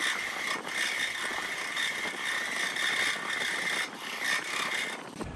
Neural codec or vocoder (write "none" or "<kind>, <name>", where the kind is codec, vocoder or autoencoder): none